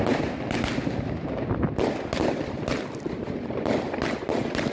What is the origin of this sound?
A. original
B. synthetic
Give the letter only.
A